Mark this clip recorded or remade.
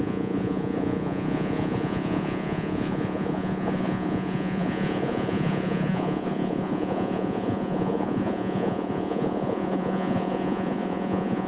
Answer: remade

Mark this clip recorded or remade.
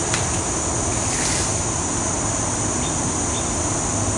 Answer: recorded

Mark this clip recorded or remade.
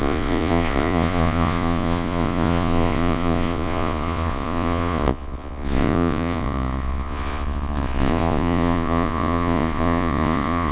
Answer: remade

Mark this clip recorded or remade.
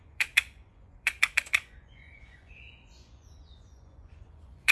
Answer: remade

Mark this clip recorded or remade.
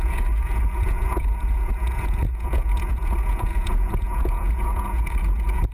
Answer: remade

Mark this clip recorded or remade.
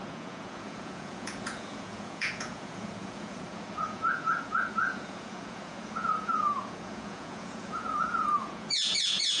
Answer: remade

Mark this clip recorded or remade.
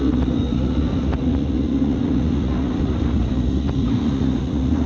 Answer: remade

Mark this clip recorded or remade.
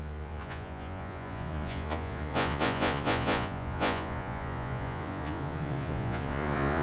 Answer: remade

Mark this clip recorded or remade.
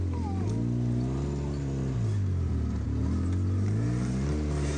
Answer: recorded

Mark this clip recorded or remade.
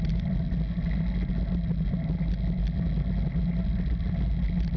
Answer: recorded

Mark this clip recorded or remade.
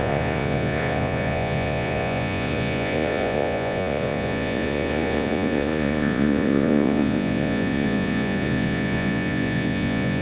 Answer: remade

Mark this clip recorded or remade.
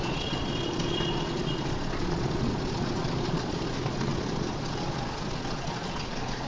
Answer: remade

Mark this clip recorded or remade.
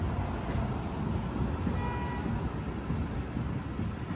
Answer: recorded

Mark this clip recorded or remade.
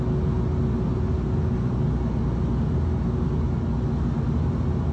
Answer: recorded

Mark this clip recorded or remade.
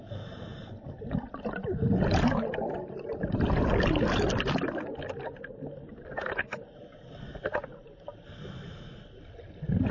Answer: recorded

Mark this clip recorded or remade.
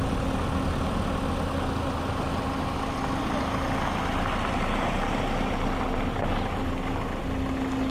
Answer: recorded